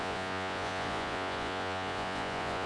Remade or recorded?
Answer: remade